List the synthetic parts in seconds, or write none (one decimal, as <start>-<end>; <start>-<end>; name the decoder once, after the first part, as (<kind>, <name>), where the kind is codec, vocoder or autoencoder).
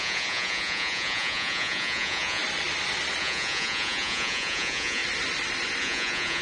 0.0-2.4 (vocoder, Vocos); 3.2-5.0; 5.8-6.4